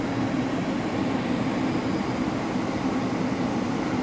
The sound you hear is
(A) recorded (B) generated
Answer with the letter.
A